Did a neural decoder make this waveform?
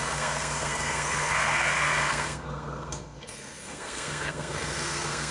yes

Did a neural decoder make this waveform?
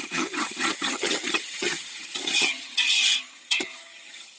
yes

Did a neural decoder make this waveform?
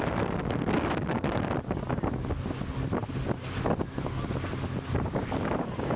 no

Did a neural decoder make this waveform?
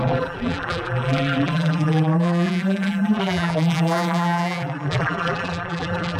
yes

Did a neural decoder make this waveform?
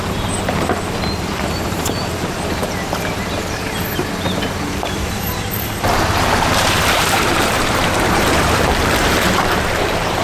yes